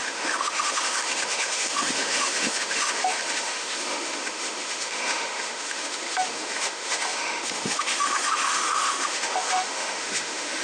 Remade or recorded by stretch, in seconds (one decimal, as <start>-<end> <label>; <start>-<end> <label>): 0.0-10.6 remade